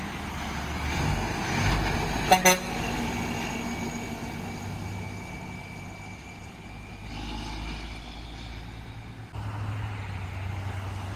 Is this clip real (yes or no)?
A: yes